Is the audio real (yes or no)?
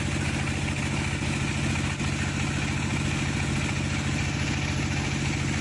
yes